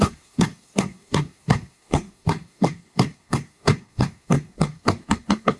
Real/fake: fake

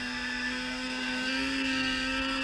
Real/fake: fake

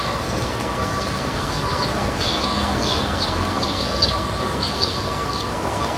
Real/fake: fake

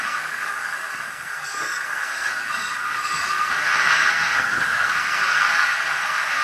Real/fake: fake